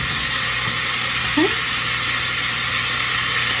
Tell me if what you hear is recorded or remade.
recorded